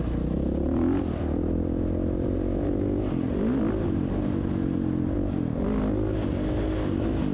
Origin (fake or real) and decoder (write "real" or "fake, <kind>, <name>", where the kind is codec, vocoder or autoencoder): real